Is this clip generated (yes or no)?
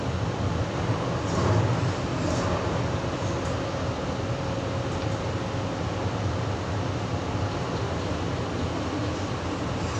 no